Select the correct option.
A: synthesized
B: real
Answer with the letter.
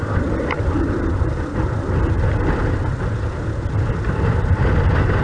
B